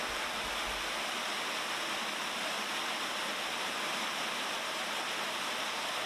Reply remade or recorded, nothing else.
recorded